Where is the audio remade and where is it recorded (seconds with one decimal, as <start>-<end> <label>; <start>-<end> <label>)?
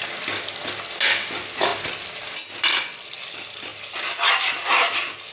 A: 0.0-5.3 recorded